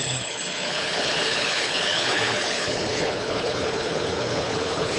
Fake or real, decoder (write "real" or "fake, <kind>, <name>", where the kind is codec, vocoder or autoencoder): fake, codec, HILCodec